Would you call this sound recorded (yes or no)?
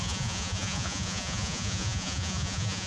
no